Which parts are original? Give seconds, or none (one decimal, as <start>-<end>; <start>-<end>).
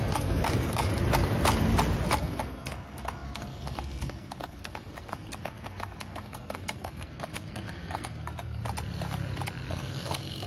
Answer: 0.9-2.2; 8.6-9.7